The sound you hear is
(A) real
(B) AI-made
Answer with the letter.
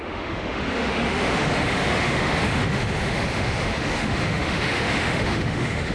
B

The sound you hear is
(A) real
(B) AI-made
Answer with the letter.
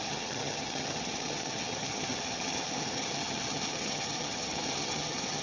B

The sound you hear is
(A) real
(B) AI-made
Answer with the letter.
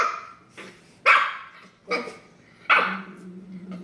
A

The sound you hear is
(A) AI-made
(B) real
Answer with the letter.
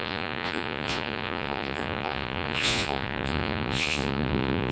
A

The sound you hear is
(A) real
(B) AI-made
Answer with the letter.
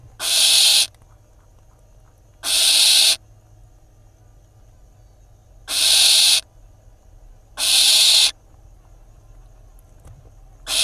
A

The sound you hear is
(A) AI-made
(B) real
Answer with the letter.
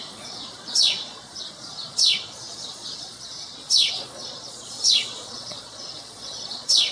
A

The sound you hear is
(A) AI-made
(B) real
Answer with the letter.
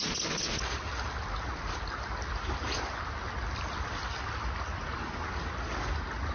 B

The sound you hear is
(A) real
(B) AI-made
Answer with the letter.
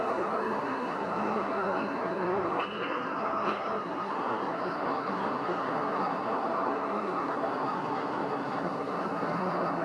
B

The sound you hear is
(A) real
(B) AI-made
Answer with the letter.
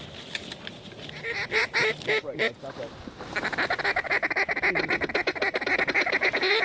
A